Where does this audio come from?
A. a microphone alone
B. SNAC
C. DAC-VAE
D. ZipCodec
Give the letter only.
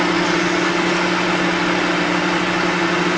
A